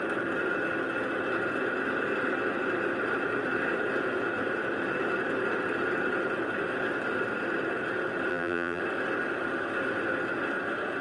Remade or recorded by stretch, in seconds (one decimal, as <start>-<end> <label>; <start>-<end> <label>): 0.0-8.3 recorded; 8.3-8.8 remade; 8.8-11.0 recorded